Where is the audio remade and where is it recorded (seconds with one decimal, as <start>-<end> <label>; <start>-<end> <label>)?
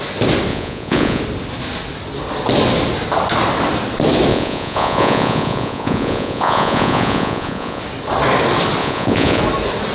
0.0-0.5 recorded; 0.5-1.2 remade; 1.2-4.3 recorded; 4.3-7.8 remade; 7.8-8.8 recorded; 8.8-9.4 remade; 9.4-9.9 recorded